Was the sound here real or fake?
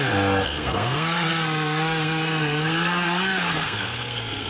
fake